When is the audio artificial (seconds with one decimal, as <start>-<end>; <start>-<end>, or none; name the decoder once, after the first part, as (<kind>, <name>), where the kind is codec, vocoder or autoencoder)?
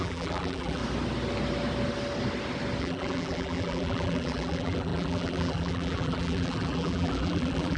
0.0-0.8 (vocoder, BigVGAN v2); 2.8-7.8